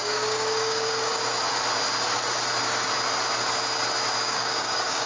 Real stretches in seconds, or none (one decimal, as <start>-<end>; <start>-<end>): 1.1-4.2